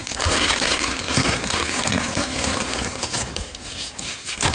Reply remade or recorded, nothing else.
remade